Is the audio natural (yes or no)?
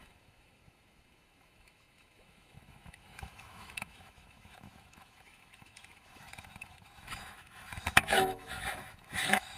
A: no